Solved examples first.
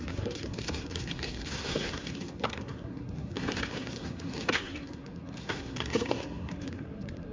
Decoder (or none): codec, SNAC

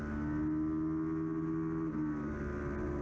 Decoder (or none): none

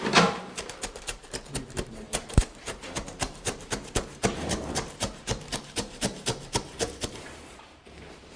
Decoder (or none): vocoder, BigVGAN v2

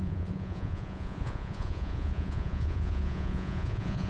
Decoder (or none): vocoder, Vocos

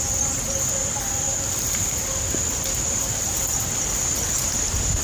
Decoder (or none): none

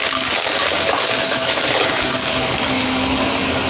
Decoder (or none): codec, DAC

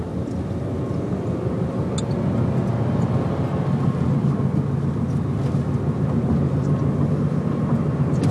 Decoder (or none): none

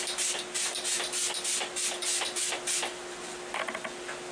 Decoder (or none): none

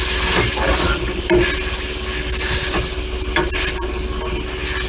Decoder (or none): none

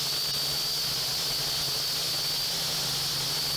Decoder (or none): none